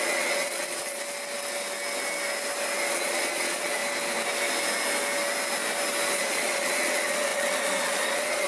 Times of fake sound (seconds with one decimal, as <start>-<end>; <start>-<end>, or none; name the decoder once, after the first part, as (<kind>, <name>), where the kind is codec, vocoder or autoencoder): 0.0-1.0 (vocoder, Vocos); 2.9-3.8; 6.2-8.5

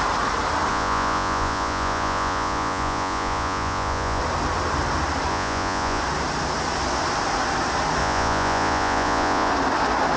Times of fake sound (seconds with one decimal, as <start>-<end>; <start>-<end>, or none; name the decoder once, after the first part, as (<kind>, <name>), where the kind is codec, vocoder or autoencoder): 0.7-4.2 (vocoder, Vocos); 5.3-6.0; 8.0-9.5

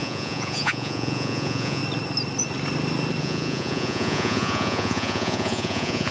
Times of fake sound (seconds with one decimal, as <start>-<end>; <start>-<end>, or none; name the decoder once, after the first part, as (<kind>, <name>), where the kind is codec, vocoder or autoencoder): 0.0-1.8 (vocoder, Vocos); 3.2-6.1

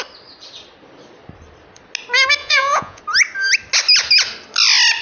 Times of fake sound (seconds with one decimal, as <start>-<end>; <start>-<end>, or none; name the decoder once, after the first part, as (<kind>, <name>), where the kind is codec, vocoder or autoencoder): 2.4-3.0 (vocoder, Vocos)

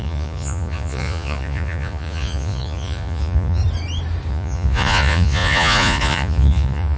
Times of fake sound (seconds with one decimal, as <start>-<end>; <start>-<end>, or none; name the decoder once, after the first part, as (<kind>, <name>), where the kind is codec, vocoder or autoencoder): 0.0-3.6 (vocoder, Vocos); 4.3-7.0

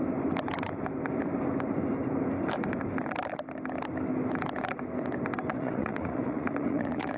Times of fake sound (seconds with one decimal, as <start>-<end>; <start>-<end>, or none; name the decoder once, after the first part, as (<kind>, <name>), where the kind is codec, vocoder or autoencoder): 5.5-7.2 (vocoder, Vocos)

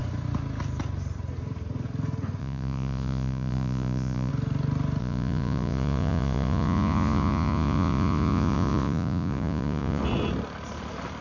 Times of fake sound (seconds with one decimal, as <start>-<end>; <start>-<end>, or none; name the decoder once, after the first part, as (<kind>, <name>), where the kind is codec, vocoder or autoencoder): 2.4-4.3 (vocoder, Vocos); 5.0-10.0